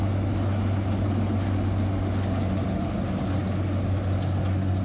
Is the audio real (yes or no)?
yes